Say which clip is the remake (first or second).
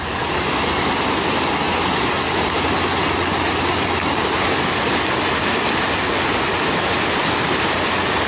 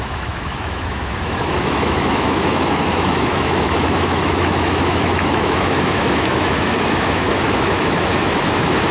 second